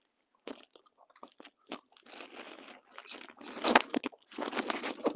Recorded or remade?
recorded